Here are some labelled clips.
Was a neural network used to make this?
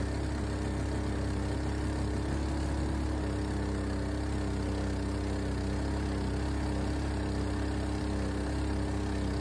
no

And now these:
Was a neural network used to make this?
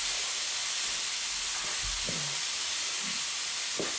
no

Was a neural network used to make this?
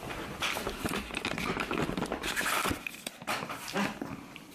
yes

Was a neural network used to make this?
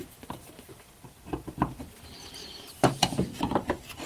yes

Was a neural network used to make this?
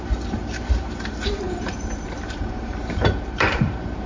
yes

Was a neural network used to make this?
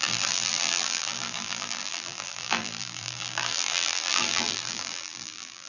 yes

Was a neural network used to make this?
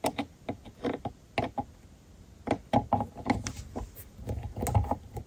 no